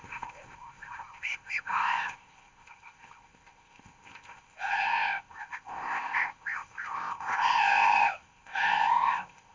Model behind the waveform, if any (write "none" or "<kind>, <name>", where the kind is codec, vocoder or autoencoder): codec, ZipCodec